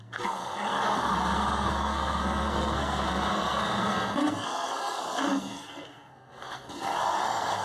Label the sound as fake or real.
fake